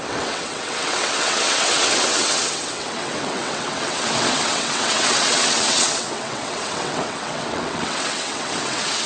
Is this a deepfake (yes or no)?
yes